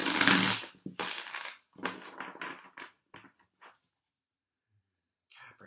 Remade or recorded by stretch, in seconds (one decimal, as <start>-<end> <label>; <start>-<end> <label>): 0.0-3.4 recorded; 3.4-5.7 remade